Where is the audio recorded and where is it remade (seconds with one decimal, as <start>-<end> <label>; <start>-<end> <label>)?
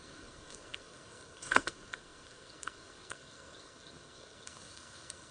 0.0-5.3 remade